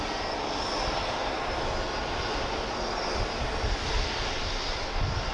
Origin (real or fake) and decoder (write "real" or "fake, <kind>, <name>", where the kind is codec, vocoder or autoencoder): real